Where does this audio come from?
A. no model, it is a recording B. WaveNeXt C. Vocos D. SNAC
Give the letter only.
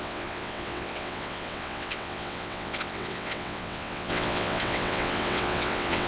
B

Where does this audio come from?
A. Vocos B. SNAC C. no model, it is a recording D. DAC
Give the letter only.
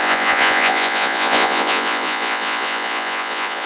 A